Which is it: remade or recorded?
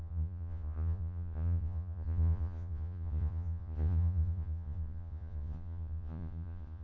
remade